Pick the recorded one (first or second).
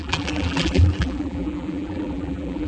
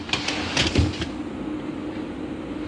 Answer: second